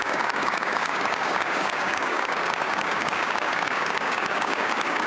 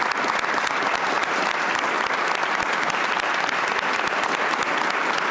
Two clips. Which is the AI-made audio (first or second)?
first